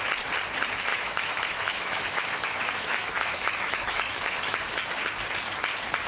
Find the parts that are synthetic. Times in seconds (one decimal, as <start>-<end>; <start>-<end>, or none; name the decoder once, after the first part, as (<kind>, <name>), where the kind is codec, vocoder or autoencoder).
0.9-4.6 (autoencoder, DAC-VAE)